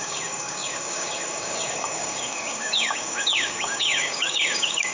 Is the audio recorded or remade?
remade